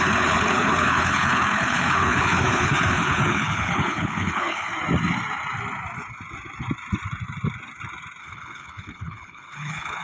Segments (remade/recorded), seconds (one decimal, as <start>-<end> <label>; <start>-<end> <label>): 0.0-4.7 remade; 4.7-8.2 recorded; 8.2-10.0 remade